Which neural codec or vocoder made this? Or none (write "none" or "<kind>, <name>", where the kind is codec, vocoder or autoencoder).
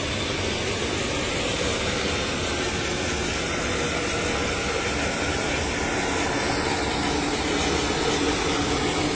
none